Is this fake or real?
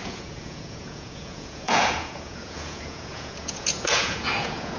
fake